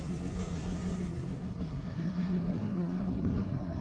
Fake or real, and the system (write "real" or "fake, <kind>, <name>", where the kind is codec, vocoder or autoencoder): fake, codec, SNAC